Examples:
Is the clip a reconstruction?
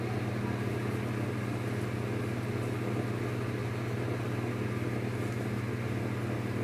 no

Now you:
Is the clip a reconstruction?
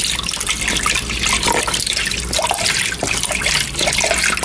no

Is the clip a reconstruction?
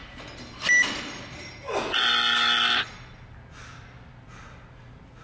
no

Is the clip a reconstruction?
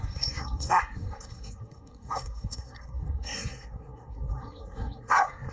yes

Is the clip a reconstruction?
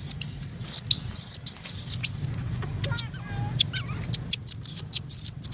no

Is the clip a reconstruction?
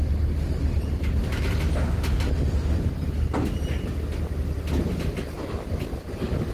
no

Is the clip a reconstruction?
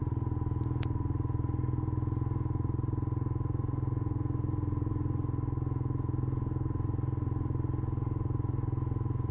no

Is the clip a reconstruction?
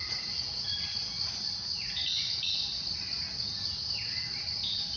no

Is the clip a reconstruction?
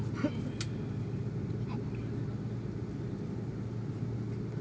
no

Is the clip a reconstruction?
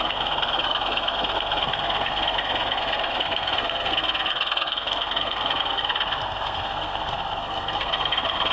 yes